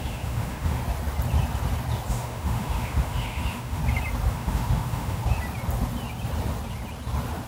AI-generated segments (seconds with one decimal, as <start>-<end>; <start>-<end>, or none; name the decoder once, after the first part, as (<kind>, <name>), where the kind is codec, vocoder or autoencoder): 0.0-0.8 (autoencoder, DAC-VAE); 2.1-3.8; 4.3-5.2